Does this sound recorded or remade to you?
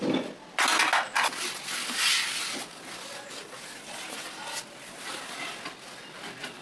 recorded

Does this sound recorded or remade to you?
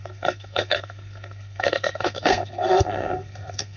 remade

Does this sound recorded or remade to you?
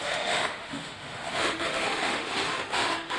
remade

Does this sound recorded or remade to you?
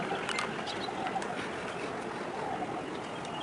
recorded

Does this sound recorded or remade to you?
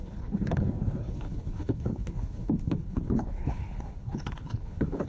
remade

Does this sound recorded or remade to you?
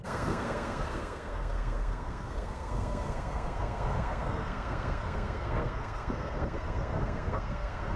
remade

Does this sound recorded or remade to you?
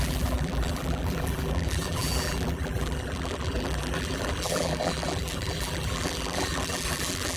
remade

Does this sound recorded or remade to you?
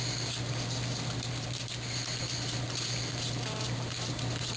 remade